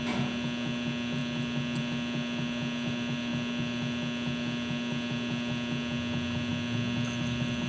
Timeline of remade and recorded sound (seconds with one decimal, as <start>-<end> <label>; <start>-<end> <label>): 0.0-7.7 recorded